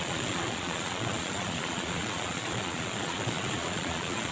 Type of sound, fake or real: fake